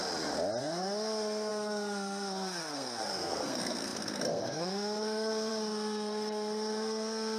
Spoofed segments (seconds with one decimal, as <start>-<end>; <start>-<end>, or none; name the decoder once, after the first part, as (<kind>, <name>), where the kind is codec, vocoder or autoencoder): 0.6-7.4 (codec, SNAC)